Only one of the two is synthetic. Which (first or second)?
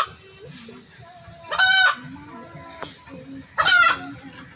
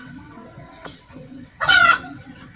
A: second